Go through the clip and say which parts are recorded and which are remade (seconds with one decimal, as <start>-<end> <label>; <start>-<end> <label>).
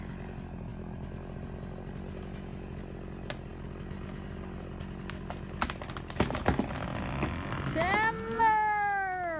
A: 0.0-9.4 recorded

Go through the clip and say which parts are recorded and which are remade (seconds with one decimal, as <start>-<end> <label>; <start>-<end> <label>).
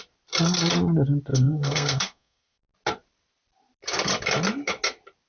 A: 0.0-1.3 recorded; 1.3-2.6 remade; 2.6-5.3 recorded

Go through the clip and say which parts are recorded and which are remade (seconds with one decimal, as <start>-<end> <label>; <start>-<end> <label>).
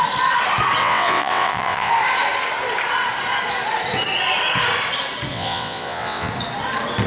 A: 0.0-0.8 recorded; 0.8-1.9 remade; 1.9-5.3 recorded; 5.3-6.3 remade; 6.3-7.1 recorded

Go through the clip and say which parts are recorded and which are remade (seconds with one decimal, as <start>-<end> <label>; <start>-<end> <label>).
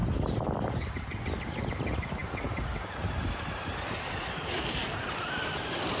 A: 0.0-6.0 recorded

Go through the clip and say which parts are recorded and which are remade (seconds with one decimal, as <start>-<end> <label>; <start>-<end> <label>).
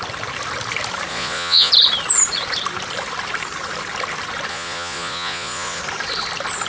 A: 0.0-1.1 recorded; 1.1-1.7 remade; 1.7-4.5 recorded; 4.5-5.8 remade; 5.8-6.7 recorded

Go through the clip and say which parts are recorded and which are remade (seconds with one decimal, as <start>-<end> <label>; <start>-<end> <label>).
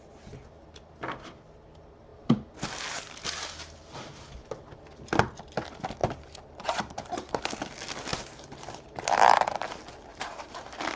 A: 0.0-6.0 recorded; 6.0-7.4 remade; 7.4-8.1 recorded; 8.1-9.7 remade; 9.7-10.1 recorded; 10.1-11.0 remade